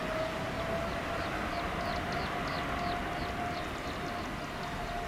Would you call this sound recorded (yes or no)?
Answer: yes